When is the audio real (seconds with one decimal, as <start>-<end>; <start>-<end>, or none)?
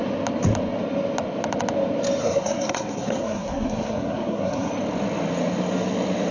0.0-2.2; 4.7-6.3